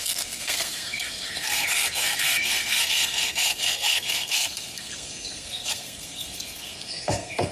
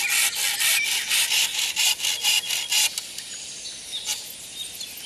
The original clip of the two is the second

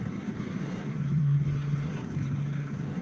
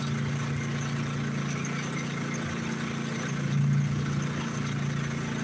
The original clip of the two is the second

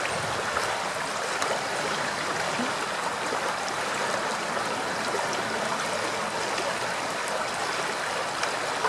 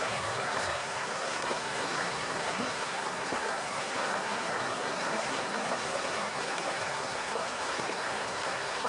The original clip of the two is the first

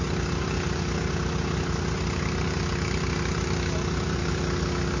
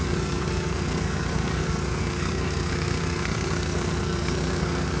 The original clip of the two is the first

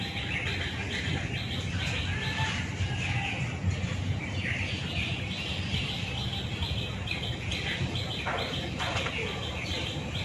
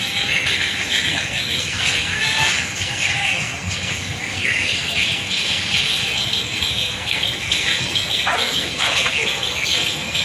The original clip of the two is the first